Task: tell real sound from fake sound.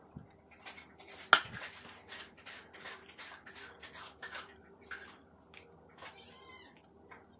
real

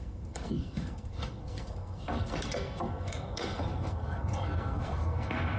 fake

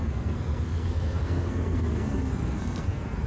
fake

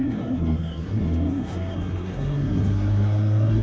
fake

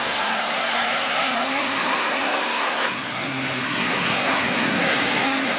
fake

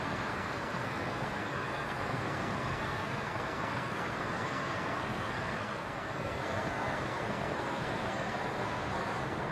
fake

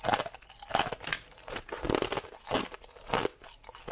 real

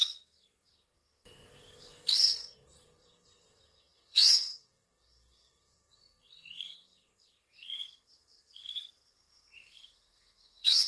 fake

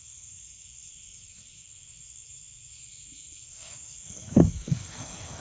fake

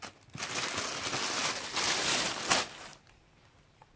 real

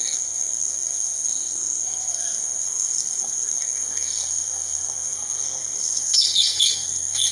fake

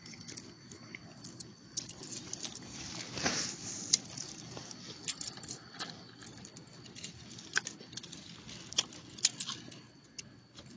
real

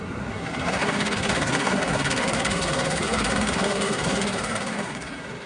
fake